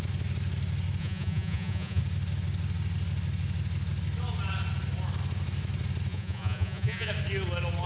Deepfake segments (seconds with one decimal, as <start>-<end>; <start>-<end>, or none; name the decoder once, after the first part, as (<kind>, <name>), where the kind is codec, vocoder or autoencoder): 1.0-2.0 (vocoder, Vocos); 6.1-7.1